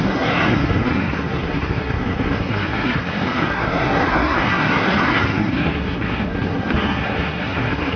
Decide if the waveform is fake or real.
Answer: fake